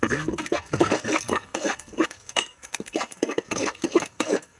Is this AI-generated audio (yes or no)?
yes